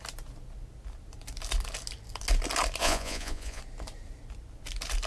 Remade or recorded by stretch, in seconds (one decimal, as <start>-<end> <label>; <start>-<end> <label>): 0.0-2.8 recorded; 2.8-3.6 remade; 3.6-5.1 recorded